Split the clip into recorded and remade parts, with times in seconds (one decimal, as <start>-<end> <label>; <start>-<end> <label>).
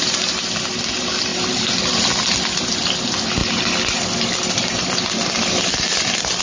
0.0-6.4 recorded